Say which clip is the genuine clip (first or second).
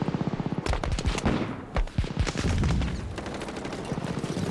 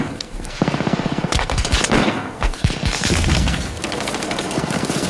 first